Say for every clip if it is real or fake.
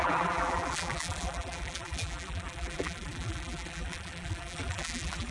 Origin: fake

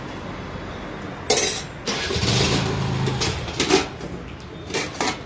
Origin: real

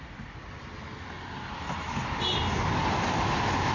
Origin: real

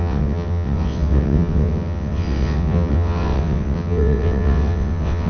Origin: fake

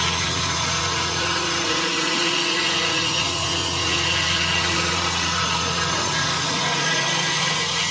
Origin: fake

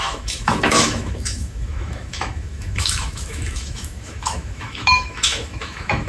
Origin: fake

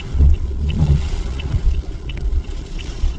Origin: fake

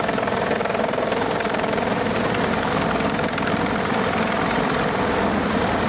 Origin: real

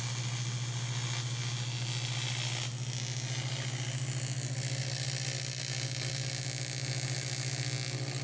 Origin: real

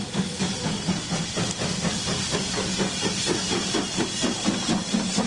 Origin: real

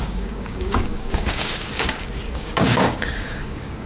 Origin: fake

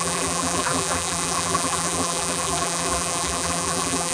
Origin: fake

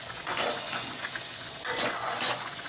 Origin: fake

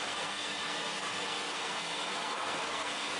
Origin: fake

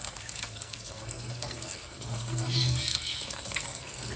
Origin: fake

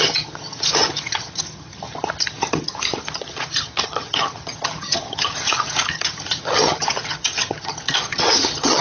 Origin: fake